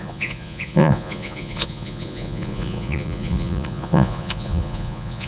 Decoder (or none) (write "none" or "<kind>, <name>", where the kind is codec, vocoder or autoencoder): vocoder, Vocos